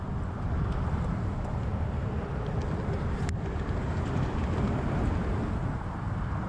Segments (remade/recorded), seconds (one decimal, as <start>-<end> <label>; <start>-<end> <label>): 0.0-6.5 recorded